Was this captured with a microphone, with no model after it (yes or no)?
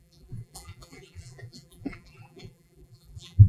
no